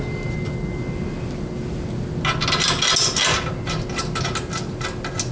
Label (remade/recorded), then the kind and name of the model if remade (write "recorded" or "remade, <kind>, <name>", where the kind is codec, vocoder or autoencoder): recorded